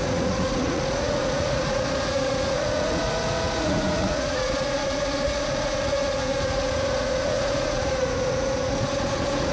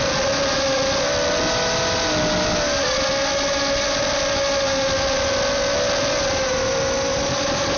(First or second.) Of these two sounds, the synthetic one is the first